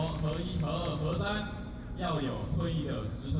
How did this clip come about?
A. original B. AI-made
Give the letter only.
A